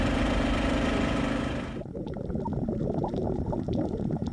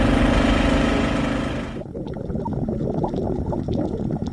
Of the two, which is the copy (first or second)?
first